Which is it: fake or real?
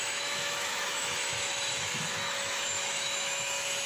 fake